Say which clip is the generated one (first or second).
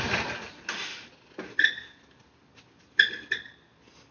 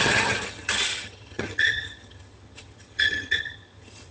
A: second